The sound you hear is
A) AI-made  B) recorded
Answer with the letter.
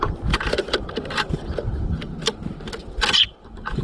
A